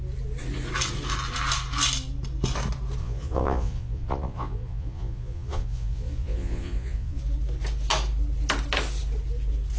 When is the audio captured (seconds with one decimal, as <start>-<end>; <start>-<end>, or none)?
0.0-3.0; 7.2-9.8